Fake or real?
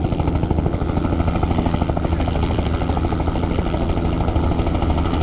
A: real